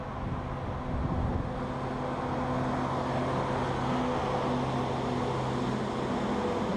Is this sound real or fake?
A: real